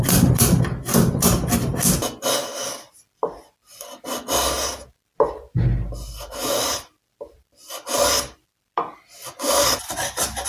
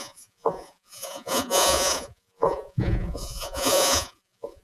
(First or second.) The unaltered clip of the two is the first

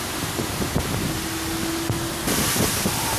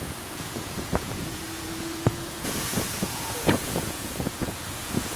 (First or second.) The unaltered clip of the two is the first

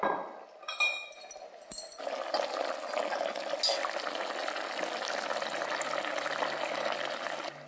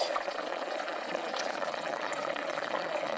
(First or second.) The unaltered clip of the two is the first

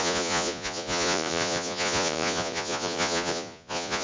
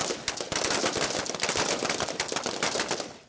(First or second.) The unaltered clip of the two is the second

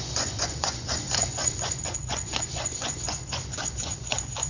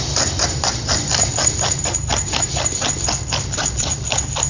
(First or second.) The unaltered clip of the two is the second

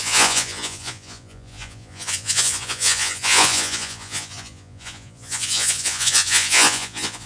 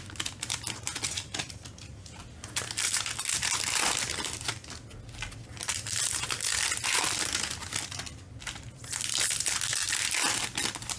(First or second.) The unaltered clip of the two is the second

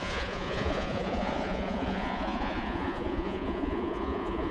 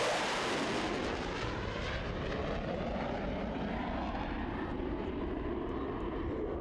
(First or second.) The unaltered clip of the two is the second